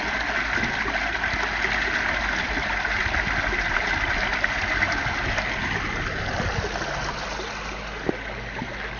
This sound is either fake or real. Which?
real